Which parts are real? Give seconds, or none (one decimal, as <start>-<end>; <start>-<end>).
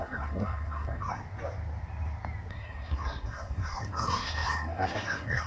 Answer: 1.2-2.5